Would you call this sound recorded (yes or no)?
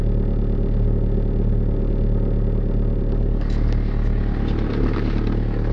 yes